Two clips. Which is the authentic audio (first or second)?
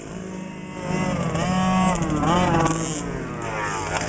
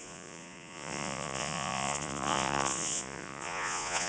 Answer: first